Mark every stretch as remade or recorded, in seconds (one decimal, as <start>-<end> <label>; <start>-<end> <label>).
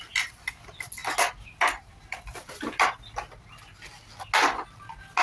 0.0-5.2 recorded